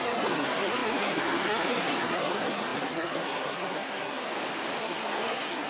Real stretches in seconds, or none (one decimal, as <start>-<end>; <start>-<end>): 4.3-4.8